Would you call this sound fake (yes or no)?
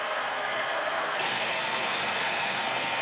yes